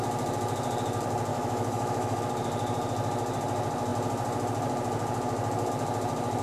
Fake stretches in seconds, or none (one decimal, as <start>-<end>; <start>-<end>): 1.3-2.2